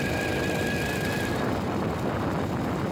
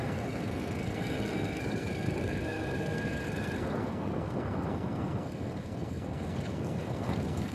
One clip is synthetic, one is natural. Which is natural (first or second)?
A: first